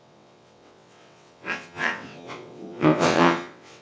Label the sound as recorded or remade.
remade